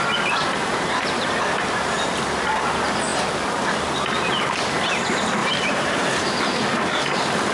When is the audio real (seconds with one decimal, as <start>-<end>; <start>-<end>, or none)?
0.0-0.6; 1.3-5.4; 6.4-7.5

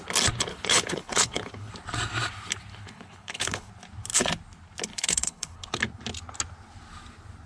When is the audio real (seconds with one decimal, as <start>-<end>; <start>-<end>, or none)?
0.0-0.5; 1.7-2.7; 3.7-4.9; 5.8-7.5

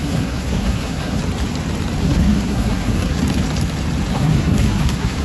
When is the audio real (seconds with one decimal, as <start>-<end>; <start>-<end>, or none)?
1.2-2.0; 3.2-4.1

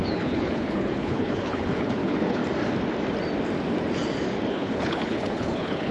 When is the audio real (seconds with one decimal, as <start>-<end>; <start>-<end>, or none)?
2.4-4.5

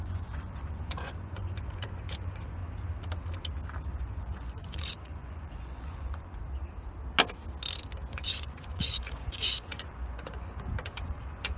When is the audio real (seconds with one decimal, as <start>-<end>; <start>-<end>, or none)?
2.6-3.9; 6.4-8.1